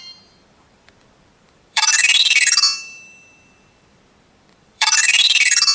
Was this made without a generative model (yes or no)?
no